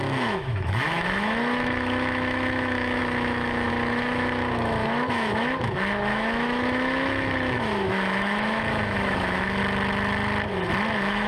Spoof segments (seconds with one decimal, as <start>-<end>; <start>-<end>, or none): 0.0-9.6; 10.9-11.3